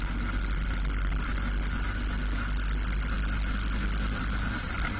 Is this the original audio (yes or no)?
yes